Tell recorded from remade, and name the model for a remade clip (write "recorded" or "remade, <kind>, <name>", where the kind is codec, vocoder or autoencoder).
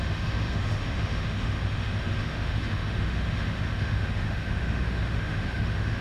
remade, autoencoder, DAC-VAE